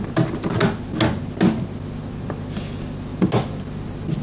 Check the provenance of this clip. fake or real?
real